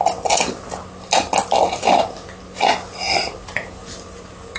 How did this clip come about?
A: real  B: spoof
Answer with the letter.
A